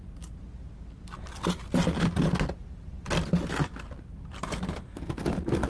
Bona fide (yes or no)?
yes